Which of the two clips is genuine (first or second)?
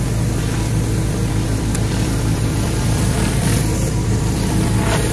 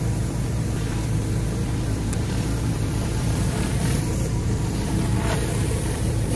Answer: first